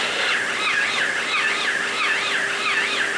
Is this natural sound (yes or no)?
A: yes